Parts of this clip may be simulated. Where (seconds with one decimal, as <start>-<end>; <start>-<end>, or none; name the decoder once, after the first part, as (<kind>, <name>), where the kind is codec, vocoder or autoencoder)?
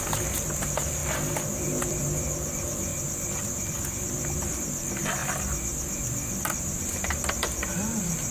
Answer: 0.0-1.0 (vocoder, BigVGAN v2); 1.6-2.9; 4.4-5.2; 6.4-8.3